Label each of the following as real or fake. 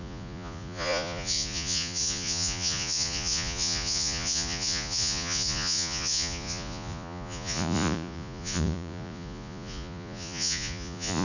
fake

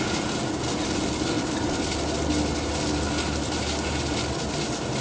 real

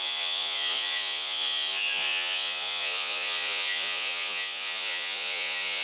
fake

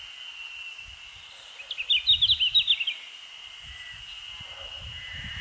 real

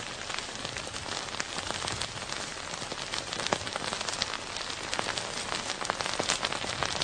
real